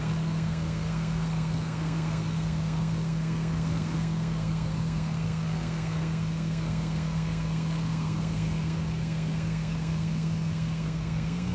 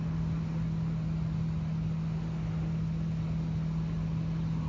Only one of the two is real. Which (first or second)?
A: second